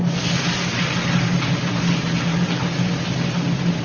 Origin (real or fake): real